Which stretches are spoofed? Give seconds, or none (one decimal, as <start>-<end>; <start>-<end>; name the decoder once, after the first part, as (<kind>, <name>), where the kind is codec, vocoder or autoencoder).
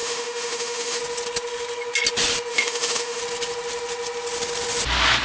0.0-1.0 (autoencoder, DAC-VAE); 2.5-3.2